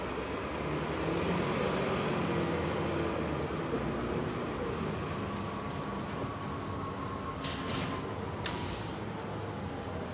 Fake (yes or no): no